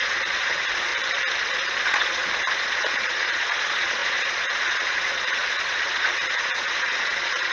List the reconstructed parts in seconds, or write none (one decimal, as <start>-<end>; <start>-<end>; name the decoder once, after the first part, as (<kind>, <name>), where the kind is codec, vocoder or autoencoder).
0.0-0.9 (vocoder, Vocos); 1.4-7.5

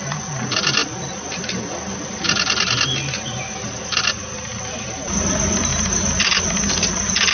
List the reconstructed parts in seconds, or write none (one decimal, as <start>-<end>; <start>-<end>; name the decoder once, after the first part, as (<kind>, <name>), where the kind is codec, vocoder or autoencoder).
none

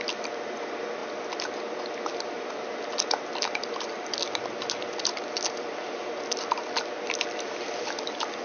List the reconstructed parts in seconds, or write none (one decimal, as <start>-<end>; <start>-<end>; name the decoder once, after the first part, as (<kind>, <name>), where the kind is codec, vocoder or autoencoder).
none

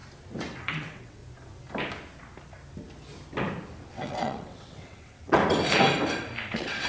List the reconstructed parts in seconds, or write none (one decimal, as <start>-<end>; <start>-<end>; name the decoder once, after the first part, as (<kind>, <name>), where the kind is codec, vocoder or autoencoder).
0.6-1.2 (vocoder, WaveNeXt); 3.9-5.4; 6.5-6.9

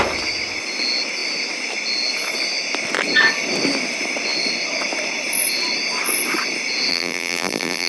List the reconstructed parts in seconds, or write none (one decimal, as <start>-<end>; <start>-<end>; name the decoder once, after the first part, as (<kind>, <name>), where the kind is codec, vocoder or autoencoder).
6.9-7.9 (vocoder, BigVGAN v2)

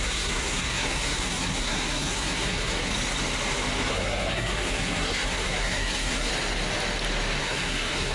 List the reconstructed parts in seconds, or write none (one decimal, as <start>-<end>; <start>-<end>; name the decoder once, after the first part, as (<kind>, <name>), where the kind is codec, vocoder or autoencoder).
0.0-2.9 (codec, SNAC); 3.9-6.3; 7.4-8.1

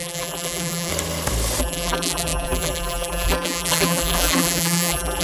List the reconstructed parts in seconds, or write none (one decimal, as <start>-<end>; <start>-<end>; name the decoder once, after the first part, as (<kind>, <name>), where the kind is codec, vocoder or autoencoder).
0.0-0.9 (vocoder, BigVGAN v2); 1.6-5.2